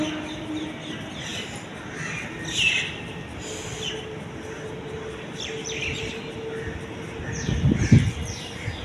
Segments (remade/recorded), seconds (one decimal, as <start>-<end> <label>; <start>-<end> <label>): 0.0-8.8 recorded